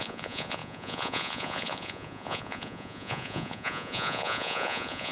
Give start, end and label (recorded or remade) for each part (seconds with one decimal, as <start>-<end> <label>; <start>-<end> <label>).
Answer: 0.0-5.1 remade